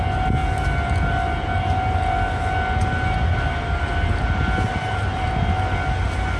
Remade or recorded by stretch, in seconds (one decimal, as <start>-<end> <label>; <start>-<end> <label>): 0.0-4.7 recorded; 4.7-5.3 remade; 5.3-6.4 recorded